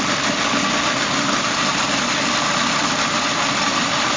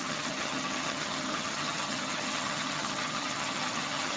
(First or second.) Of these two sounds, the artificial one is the second